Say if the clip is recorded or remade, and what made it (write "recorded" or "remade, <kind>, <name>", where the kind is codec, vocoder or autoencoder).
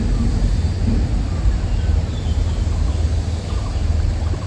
recorded